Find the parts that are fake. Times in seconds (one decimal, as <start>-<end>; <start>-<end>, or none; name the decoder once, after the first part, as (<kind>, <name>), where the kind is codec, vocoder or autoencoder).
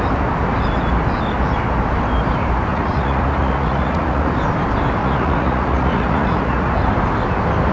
2.7-4.4 (vocoder, Vocos); 5.0-6.7